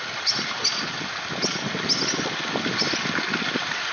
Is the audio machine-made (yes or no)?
no